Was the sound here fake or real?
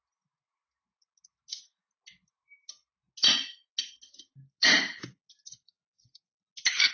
real